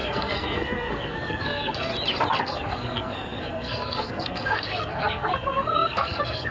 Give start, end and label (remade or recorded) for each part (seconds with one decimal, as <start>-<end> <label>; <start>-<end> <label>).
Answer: 0.0-1.9 remade; 1.9-2.4 recorded; 2.4-6.5 remade

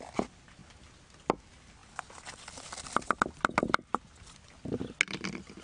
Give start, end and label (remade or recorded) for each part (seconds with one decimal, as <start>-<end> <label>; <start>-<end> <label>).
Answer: 0.0-5.6 recorded

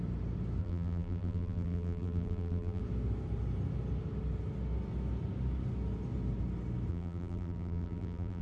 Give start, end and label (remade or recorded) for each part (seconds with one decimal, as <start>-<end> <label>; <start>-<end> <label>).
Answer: 0.0-0.6 recorded; 0.6-2.8 remade; 2.8-6.9 recorded; 6.9-8.4 remade

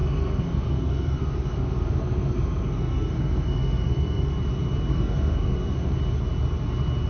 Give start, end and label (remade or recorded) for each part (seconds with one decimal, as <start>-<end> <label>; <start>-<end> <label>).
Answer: 0.0-4.3 remade; 4.3-4.9 recorded; 4.9-6.0 remade; 6.0-7.1 recorded

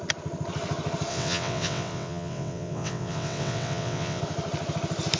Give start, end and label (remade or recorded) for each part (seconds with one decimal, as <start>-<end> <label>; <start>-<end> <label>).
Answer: 0.0-1.1 recorded; 1.1-4.2 remade; 4.2-5.2 recorded

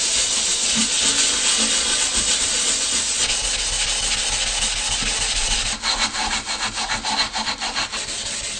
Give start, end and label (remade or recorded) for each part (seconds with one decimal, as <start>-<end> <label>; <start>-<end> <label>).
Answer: 0.0-8.6 recorded